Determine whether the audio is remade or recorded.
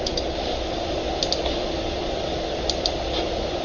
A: recorded